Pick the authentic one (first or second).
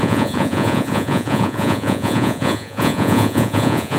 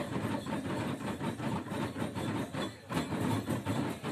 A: second